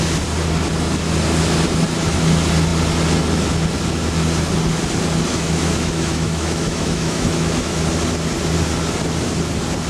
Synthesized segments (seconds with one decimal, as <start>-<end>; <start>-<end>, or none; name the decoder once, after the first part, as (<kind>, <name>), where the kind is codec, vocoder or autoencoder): 5.3-7.8 (autoencoder, DAC-VAE)